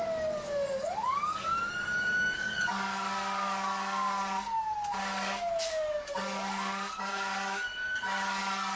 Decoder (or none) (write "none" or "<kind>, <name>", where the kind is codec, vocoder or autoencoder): codec, DAC